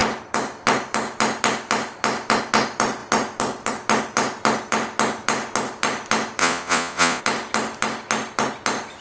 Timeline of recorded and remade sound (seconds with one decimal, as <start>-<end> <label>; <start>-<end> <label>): 0.0-6.4 recorded; 6.4-7.2 remade; 7.2-9.0 recorded

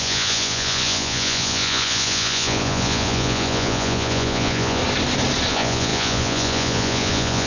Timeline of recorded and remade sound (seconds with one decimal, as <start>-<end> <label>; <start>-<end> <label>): 0.0-4.8 remade; 4.8-5.5 recorded; 5.5-7.5 remade

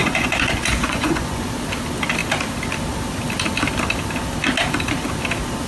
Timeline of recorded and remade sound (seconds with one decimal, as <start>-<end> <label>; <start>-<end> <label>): 0.0-1.4 remade; 1.4-5.7 recorded

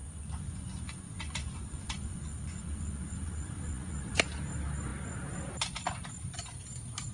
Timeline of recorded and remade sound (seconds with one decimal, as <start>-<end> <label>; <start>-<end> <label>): 0.0-4.2 remade; 4.2-7.1 recorded

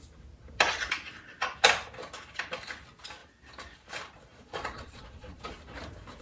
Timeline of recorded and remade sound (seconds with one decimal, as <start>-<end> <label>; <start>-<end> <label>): 0.0-4.3 recorded; 4.3-5.5 remade; 5.5-6.2 recorded

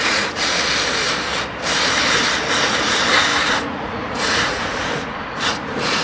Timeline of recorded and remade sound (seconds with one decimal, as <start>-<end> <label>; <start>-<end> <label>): 0.0-0.5 remade; 0.5-2.5 recorded; 2.5-6.0 remade

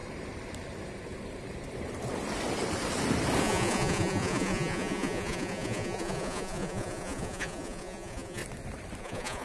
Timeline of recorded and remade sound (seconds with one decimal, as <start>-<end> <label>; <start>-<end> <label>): 0.0-3.4 recorded; 3.4-8.4 remade; 8.4-9.0 recorded; 9.0-9.4 remade

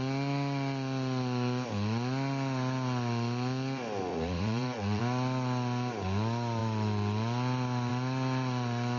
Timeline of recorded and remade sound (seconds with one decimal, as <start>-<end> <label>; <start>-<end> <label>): 0.0-4.1 recorded; 4.1-5.0 remade; 5.0-9.0 recorded